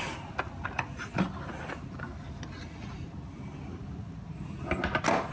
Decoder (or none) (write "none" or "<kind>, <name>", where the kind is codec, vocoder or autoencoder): none